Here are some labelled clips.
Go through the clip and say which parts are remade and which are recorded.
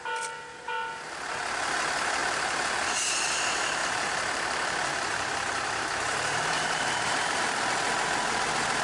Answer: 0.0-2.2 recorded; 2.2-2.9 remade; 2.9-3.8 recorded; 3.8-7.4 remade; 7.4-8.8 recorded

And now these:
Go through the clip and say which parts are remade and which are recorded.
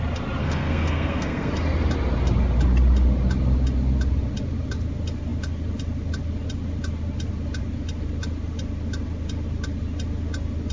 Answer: 0.0-0.4 recorded; 0.4-1.5 remade; 1.5-10.7 recorded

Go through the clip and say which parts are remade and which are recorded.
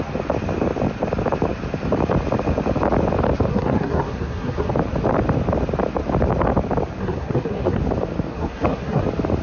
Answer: 0.0-3.5 recorded; 3.5-4.7 remade; 4.7-7.0 recorded; 7.0-7.8 remade; 7.8-8.3 recorded; 8.3-9.0 remade; 9.0-9.4 recorded